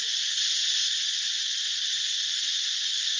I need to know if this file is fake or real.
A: real